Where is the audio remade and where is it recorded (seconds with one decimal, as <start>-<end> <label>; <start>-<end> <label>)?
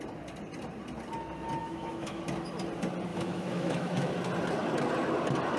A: 0.0-1.6 recorded; 1.6-2.2 remade; 2.2-3.1 recorded; 3.1-4.1 remade; 4.1-5.6 recorded